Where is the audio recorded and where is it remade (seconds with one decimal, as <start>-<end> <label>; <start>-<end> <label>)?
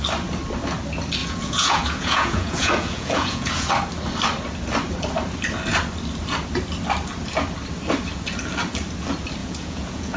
0.0-1.2 recorded; 1.2-3.7 remade; 3.7-9.4 recorded; 9.4-10.2 remade